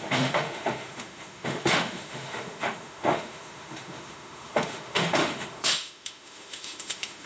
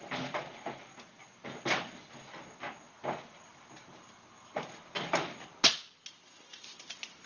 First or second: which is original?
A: second